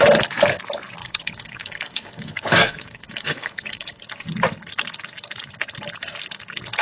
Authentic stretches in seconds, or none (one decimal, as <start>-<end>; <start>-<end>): 0.0-1.0; 4.0-6.8